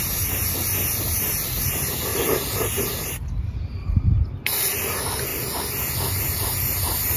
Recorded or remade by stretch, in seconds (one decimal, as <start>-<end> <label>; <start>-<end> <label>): 0.0-2.1 recorded; 2.1-2.9 remade; 2.9-7.2 recorded